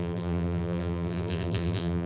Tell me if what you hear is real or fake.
fake